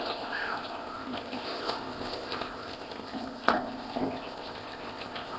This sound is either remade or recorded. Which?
remade